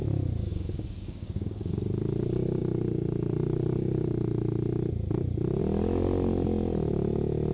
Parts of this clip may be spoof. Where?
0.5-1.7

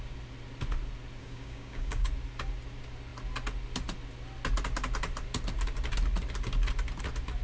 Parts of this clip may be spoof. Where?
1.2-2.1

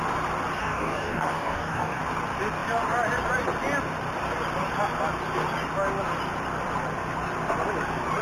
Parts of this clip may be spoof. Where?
0.6-2.0